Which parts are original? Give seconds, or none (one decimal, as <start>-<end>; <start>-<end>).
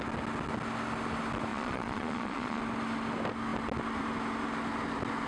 0.0-1.5; 2.6-5.3